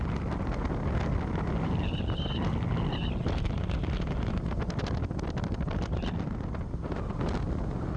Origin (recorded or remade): recorded